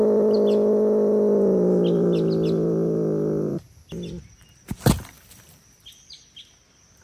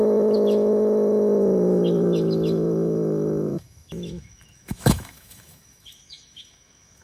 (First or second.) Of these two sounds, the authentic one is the first